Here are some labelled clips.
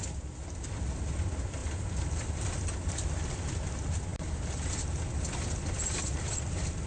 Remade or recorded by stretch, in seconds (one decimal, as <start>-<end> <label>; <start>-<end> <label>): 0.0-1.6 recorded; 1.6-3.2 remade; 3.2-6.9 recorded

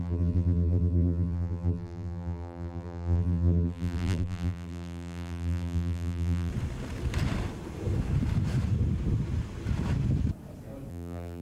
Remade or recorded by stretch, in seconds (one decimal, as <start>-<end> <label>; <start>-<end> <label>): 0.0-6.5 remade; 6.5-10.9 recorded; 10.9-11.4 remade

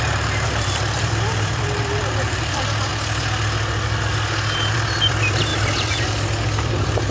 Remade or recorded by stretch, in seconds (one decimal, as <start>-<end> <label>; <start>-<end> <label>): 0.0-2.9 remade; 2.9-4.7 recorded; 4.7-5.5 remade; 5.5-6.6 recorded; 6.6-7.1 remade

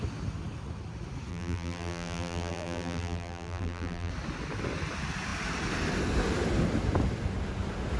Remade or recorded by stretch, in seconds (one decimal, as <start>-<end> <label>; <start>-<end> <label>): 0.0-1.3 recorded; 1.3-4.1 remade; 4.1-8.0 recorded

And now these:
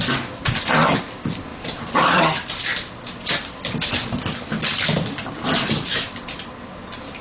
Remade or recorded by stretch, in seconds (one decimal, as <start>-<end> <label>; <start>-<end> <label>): 0.0-1.5 recorded; 1.5-2.2 remade; 2.2-7.2 recorded

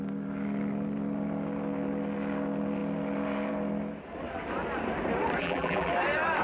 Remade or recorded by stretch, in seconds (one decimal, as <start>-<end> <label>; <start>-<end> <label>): 0.0-5.4 recorded; 5.4-5.9 remade; 5.9-6.4 recorded

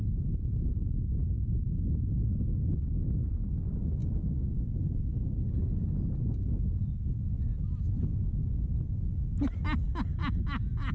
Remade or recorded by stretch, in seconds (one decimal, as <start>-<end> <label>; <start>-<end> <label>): 0.0-10.9 recorded